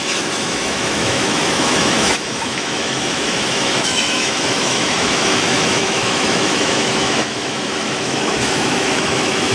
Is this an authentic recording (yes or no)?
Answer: no